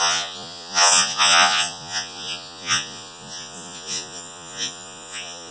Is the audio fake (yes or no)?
yes